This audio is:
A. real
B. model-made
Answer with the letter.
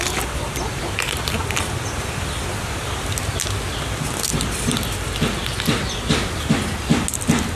A